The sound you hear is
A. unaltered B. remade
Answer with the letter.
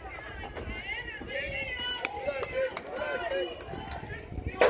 A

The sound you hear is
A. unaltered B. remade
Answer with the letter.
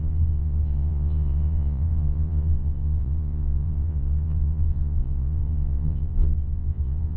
B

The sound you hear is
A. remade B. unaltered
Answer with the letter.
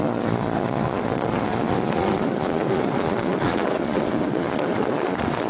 A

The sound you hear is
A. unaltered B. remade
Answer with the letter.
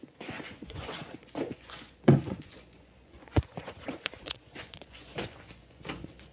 B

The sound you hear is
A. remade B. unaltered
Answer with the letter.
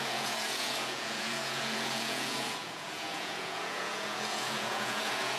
A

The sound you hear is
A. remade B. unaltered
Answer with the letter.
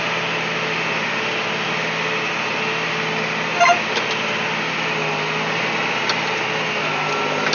B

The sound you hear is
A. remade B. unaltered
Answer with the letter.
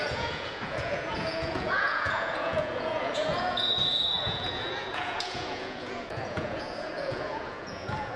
A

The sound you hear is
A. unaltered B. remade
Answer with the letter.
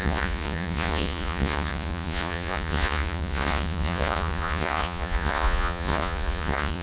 B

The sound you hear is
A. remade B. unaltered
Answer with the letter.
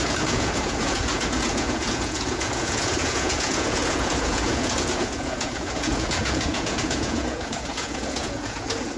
A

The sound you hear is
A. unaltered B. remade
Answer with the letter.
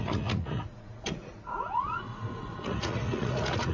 B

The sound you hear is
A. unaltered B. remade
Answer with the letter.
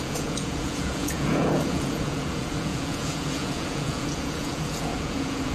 B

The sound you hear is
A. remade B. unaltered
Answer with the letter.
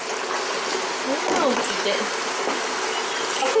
B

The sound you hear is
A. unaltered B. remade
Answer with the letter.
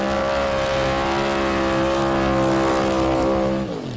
A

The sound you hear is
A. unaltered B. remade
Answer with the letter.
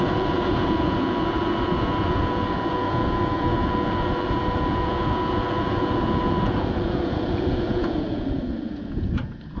B